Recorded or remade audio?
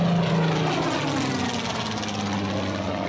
recorded